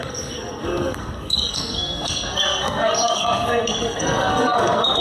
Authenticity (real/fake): fake